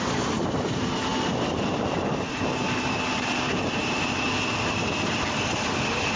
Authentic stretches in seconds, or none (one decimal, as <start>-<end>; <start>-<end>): 0.0-6.2